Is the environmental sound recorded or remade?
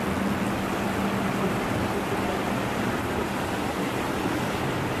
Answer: recorded